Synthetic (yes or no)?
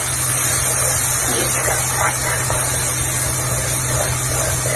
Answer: no